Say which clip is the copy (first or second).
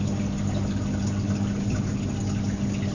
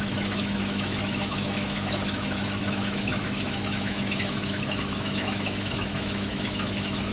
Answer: second